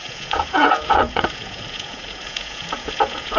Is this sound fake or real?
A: fake